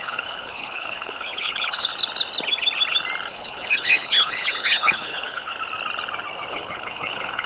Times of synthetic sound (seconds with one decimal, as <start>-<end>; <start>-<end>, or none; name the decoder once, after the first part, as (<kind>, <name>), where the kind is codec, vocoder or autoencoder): 0.0-1.9 (codec, HILCodec); 3.3-5.5; 6.5-7.5